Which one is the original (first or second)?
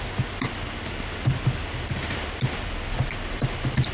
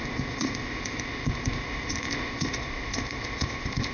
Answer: first